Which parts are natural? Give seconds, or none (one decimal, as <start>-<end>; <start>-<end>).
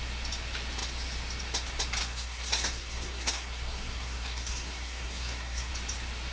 0.0-2.0; 5.7-6.3